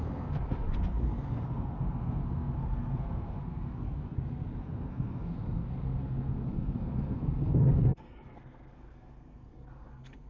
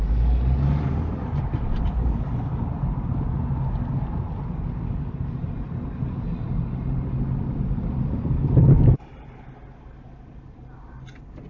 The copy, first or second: first